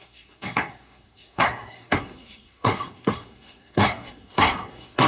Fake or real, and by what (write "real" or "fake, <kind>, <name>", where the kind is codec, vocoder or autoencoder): fake, codec, SNAC